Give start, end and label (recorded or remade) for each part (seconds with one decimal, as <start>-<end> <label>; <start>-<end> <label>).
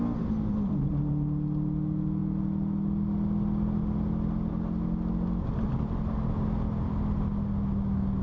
0.0-8.2 recorded